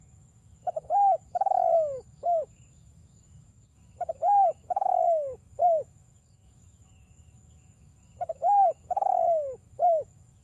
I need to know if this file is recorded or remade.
remade